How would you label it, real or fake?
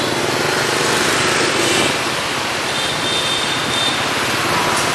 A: real